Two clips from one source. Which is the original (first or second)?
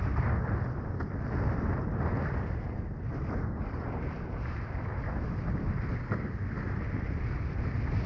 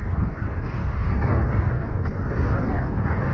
first